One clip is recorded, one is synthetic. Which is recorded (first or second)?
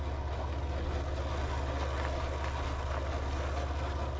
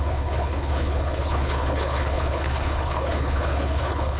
first